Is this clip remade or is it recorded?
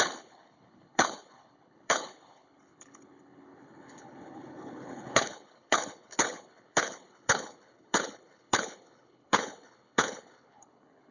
remade